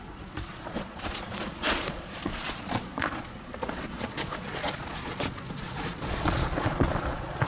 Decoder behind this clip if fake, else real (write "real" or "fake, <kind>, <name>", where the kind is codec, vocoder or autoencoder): fake, vocoder, Vocos